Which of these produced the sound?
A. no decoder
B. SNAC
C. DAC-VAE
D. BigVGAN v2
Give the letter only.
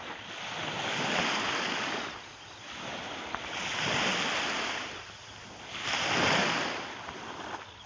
A